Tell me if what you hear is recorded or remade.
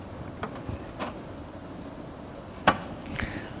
recorded